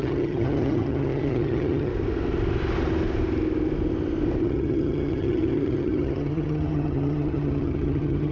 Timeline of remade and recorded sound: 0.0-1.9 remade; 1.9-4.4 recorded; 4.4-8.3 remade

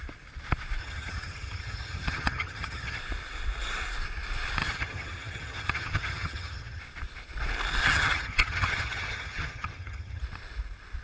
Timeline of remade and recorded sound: 0.0-0.8 recorded; 0.8-3.0 remade; 3.0-4.6 recorded; 4.6-6.8 remade; 6.8-7.8 recorded; 7.8-10.2 remade; 10.2-11.0 recorded

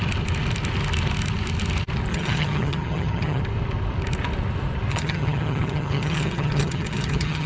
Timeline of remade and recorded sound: 0.0-2.1 recorded; 2.1-3.4 remade; 3.4-4.9 recorded; 4.9-7.5 remade

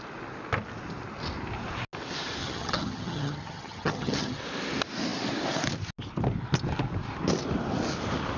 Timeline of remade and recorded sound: 0.0-2.4 recorded; 2.4-4.4 remade; 4.4-8.4 recorded

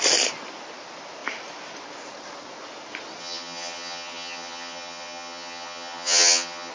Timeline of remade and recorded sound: 0.0-3.2 recorded; 3.2-6.7 remade

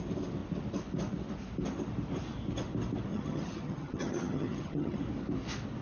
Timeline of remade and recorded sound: 0.0-3.1 recorded; 3.1-5.0 remade; 5.0-5.8 recorded

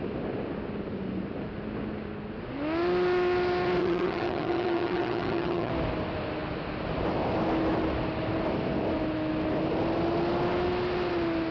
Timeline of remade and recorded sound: 0.0-3.8 recorded; 3.8-5.7 remade; 5.7-11.5 recorded

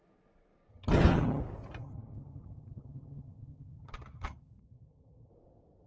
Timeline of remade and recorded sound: 0.0-0.7 recorded; 0.7-1.4 remade; 1.4-1.8 recorded; 1.8-5.3 remade; 5.3-5.9 recorded